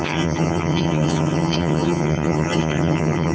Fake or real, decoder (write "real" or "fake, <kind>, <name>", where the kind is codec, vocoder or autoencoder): fake, vocoder, HiFi-GAN